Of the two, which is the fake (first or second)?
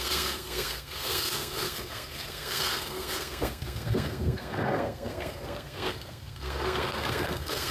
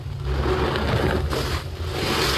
first